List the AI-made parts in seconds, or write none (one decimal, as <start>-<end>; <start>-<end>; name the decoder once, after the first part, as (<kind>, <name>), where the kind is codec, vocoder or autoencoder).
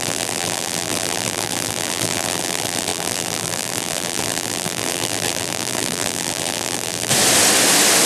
0.0-7.1 (vocoder, BigVGAN v2)